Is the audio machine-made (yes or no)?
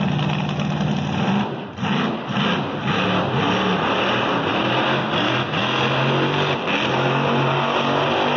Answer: no